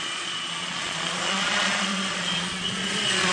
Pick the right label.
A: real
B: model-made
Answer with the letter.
B